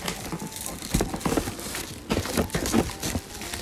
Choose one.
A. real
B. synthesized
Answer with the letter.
A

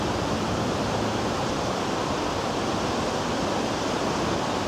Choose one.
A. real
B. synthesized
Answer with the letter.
B